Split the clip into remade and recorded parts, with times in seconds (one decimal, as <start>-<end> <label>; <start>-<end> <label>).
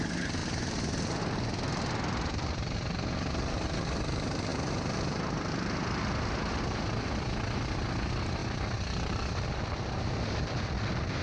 0.0-0.4 recorded; 0.4-1.2 remade; 1.2-4.5 recorded; 4.5-6.6 remade; 6.6-8.4 recorded; 8.4-10.6 remade; 10.6-11.2 recorded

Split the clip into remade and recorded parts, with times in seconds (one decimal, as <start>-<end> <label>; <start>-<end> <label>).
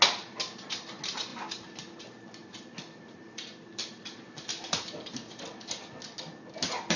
0.0-2.4 recorded; 2.4-6.0 remade; 6.0-7.0 recorded